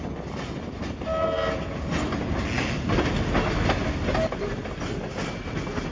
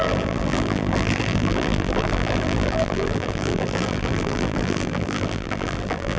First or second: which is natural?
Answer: first